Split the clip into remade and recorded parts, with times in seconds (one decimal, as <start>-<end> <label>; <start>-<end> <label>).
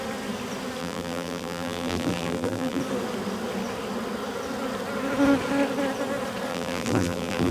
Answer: 0.0-0.8 recorded; 0.8-2.8 remade; 2.8-6.5 recorded; 6.5-7.5 remade